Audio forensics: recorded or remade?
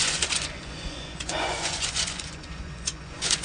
remade